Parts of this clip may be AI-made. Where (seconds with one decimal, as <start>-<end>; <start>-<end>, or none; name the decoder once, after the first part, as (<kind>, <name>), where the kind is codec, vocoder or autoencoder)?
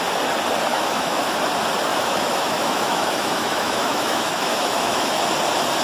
0.7-1.2 (autoencoder, DAC-VAE); 1.9-5.1